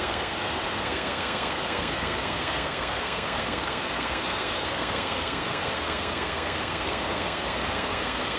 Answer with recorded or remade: remade